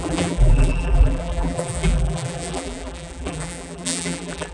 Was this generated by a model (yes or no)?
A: yes